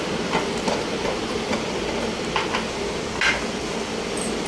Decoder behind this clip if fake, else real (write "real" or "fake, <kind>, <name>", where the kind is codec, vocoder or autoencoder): real